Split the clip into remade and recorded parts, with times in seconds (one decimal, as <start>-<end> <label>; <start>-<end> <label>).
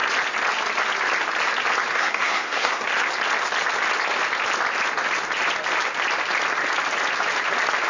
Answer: 0.0-1.9 recorded; 1.9-2.9 remade; 2.9-7.9 recorded